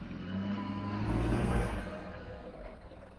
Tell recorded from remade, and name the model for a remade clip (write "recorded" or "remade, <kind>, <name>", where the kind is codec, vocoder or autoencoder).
remade, codec, SNAC